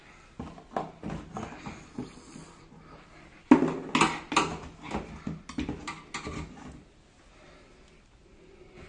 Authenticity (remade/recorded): recorded